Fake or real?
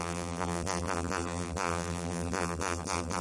fake